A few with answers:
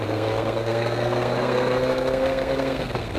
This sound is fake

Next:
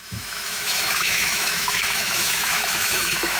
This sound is fake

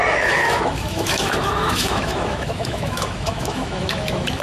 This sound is fake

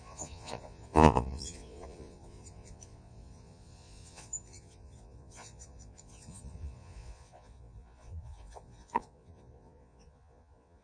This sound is fake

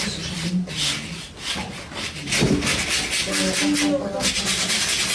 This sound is real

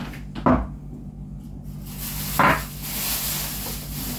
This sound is real